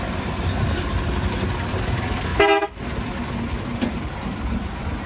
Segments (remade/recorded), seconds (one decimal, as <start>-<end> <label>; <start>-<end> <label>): 0.0-2.3 recorded; 2.3-2.8 remade; 2.8-5.1 recorded